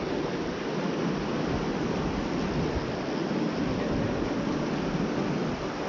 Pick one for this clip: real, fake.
real